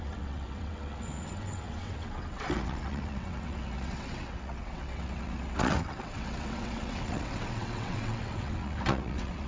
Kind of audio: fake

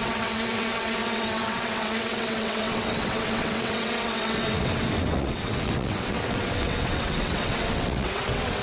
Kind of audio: fake